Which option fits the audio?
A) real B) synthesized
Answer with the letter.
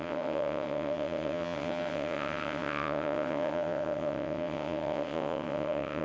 B